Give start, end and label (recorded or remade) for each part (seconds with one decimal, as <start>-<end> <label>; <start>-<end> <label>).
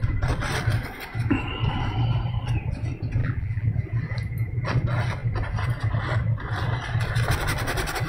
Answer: 0.0-3.2 recorded; 3.2-3.7 remade; 3.7-8.1 recorded